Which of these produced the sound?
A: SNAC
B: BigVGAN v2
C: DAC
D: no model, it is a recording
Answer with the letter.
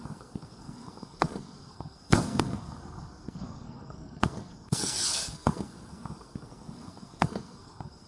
A